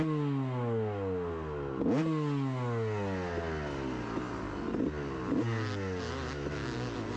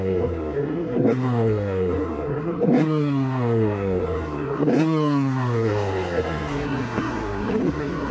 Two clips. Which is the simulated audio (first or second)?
second